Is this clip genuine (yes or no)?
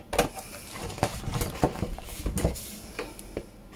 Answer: yes